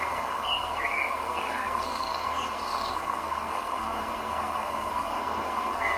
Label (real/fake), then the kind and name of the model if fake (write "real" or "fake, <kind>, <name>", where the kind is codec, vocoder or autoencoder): fake, codec, SNAC